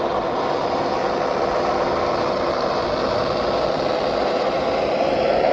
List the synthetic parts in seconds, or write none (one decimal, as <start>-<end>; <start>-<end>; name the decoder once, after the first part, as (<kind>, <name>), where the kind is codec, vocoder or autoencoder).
0.0-1.0 (vocoder, BigVGAN v2); 4.3-5.5